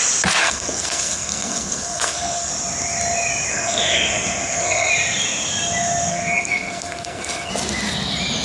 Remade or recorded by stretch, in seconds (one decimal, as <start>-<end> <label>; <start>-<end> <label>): 0.0-0.4 recorded; 0.4-2.5 remade; 2.5-3.5 recorded; 3.5-4.9 remade; 4.9-6.1 recorded; 6.1-7.5 remade; 7.5-8.4 recorded